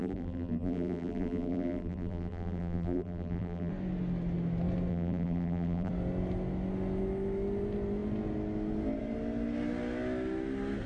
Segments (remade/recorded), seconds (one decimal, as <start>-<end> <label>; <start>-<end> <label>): 0.0-3.7 remade; 3.7-4.9 recorded; 4.9-5.9 remade; 5.9-10.9 recorded